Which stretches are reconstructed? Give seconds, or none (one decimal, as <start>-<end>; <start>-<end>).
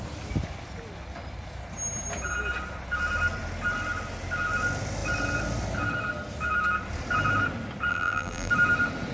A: 7.9-8.5